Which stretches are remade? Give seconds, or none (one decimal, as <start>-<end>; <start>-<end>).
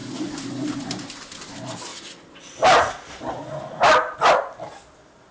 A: 0.0-0.5; 1.9-4.3